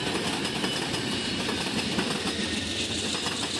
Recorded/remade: recorded